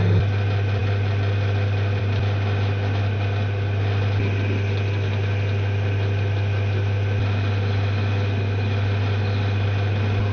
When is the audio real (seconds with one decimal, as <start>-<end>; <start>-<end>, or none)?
0.0-10.3